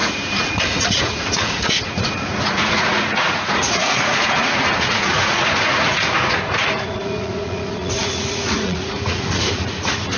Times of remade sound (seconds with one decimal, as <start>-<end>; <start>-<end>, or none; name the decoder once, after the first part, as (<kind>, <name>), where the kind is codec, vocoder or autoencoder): 0.0-10.2 (vocoder, Vocos)